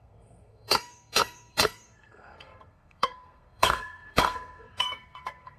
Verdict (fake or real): fake